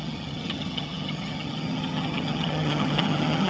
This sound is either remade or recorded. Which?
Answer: remade